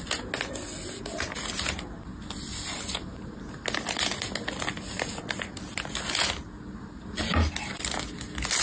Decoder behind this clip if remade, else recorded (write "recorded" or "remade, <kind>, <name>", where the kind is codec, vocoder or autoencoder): recorded